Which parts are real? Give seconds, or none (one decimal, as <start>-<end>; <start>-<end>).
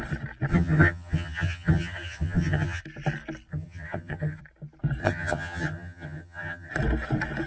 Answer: 0.0-0.5; 2.8-3.5; 4.4-5.0; 6.7-7.5